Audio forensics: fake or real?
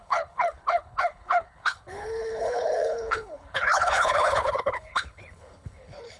fake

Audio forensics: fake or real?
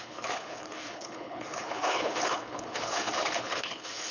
fake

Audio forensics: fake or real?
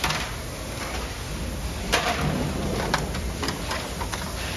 real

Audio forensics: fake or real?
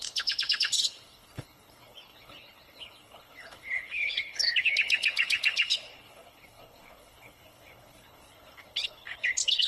fake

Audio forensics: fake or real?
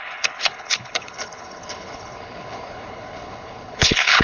fake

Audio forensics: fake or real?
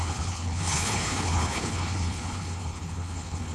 fake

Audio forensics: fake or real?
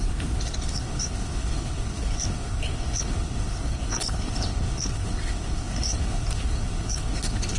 fake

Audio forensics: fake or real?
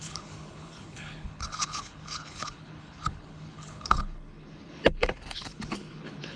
fake